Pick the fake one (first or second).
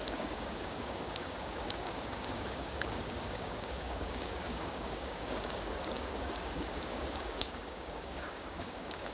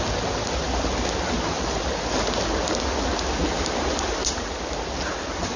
first